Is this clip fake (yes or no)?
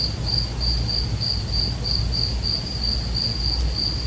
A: no